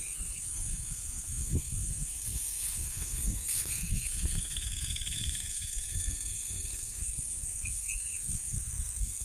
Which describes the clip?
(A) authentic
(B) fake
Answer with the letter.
B